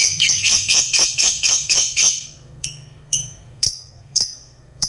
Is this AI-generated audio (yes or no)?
yes